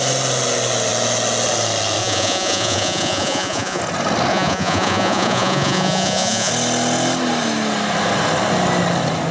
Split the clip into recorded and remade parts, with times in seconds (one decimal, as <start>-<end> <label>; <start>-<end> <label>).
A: 0.0-2.0 recorded; 2.0-3.8 remade; 3.8-4.3 recorded; 4.3-6.5 remade; 6.5-9.3 recorded